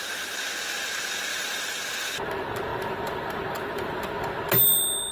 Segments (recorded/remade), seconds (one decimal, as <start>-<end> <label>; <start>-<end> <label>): 0.0-1.3 recorded; 1.3-2.2 remade; 2.2-2.7 recorded; 2.7-4.1 remade; 4.1-5.1 recorded